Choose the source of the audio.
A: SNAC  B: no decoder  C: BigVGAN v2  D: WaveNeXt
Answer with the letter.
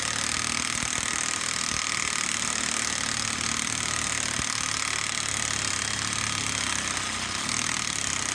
B